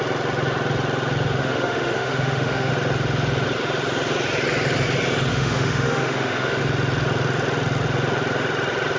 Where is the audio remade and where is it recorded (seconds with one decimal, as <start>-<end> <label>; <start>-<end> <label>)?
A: 0.0-1.4 recorded; 1.4-2.7 remade; 2.7-5.3 recorded; 5.3-6.6 remade; 6.6-9.0 recorded